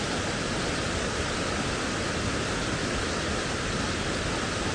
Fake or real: real